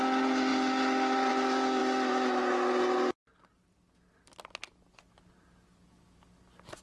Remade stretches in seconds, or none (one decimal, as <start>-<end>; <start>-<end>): none